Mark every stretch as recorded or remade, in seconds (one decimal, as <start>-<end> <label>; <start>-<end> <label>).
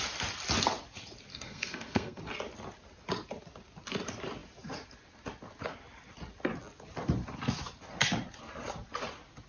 0.0-1.3 recorded; 1.3-2.2 remade; 2.2-9.5 recorded